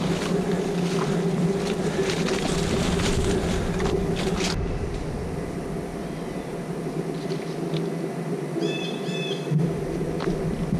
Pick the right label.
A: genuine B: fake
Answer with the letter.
A